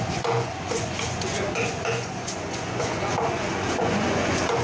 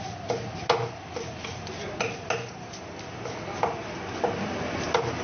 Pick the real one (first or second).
second